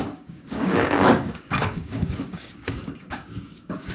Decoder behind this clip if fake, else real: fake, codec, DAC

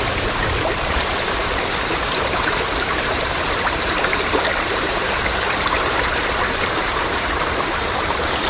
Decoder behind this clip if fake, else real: fake, vocoder, BigVGAN v2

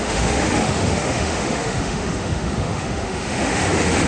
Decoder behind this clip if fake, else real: fake, autoencoder, DAC-VAE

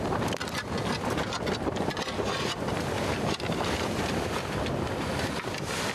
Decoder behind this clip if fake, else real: fake, vocoder, BigVGAN v2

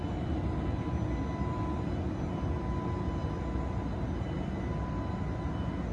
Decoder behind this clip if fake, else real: real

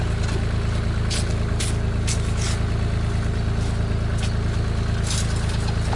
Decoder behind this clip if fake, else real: real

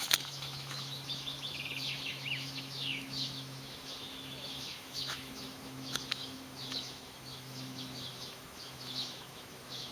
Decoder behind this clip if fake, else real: fake, autoencoder, DAC-VAE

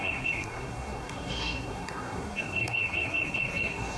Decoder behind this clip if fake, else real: fake, codec, SNAC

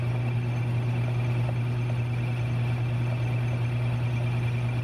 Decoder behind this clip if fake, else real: real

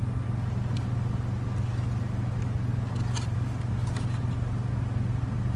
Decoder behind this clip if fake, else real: real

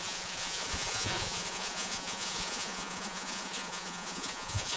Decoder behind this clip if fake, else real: fake, vocoder, Vocos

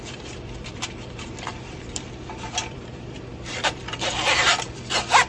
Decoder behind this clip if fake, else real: fake, vocoder, BigVGAN v2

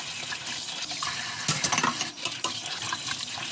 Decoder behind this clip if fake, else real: real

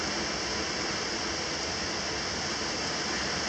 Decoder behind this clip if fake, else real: real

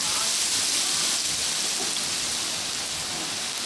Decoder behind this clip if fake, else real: real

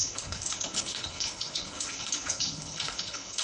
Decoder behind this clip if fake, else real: fake, codec, HILCodec